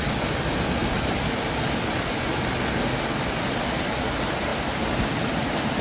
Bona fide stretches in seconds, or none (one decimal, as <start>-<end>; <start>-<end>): 0.0-5.8